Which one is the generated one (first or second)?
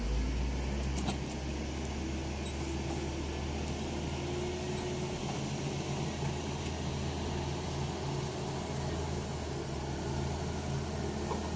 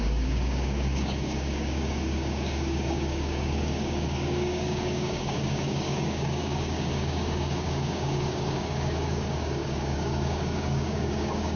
second